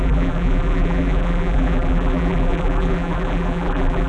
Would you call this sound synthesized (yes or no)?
yes